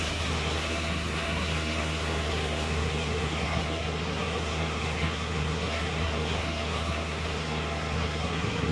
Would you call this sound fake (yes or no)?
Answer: yes